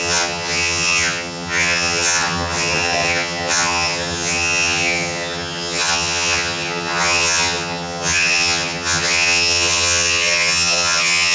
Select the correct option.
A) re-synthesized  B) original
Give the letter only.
A